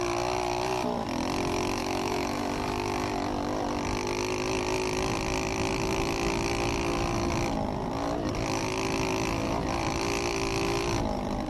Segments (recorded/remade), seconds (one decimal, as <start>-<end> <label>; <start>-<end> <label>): 0.0-1.8 recorded; 1.8-2.4 remade; 2.4-11.5 recorded